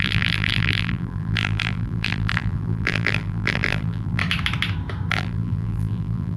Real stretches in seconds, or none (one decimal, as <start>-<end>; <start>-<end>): 4.2-5.1